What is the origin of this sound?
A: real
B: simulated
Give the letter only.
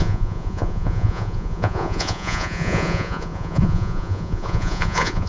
B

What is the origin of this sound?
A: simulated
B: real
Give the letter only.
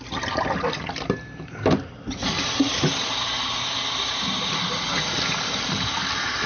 B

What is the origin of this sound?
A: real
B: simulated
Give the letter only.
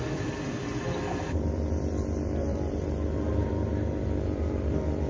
B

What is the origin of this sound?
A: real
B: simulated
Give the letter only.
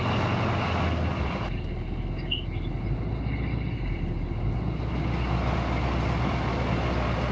A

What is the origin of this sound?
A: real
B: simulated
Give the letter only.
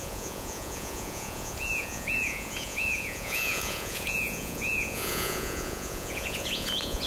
B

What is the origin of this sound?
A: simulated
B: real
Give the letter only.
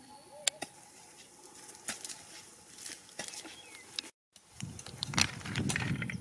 B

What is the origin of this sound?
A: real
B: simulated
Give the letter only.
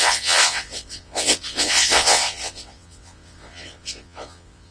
B